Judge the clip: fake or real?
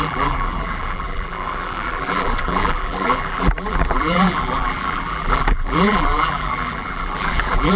fake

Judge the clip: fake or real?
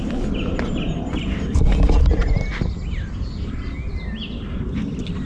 real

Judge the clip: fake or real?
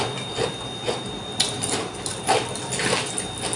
real